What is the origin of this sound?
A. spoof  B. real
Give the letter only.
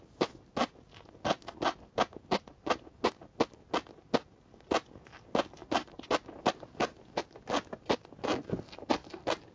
B